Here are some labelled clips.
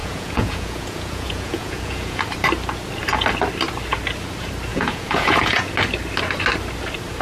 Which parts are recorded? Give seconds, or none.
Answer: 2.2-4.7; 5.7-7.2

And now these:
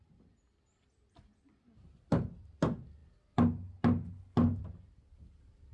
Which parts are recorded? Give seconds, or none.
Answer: 0.0-5.7